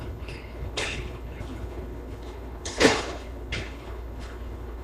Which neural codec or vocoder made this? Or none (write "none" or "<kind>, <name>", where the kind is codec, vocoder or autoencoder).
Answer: codec, HILCodec